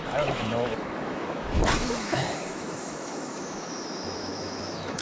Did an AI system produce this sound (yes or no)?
yes